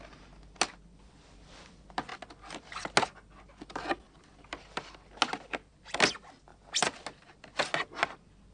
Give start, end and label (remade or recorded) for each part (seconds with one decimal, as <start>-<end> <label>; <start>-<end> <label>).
0.0-8.5 recorded